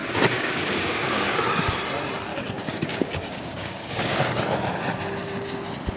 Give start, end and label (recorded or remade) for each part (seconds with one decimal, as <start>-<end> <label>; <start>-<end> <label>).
0.0-1.8 remade; 1.8-2.3 recorded; 2.3-4.4 remade; 4.4-6.0 recorded